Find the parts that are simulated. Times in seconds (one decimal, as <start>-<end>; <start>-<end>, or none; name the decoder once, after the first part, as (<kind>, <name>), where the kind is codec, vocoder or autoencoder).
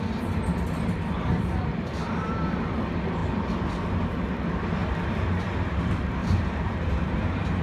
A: 6.2-7.6 (vocoder, BigVGAN v2)